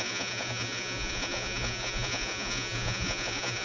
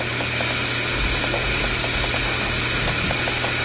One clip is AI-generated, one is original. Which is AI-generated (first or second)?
first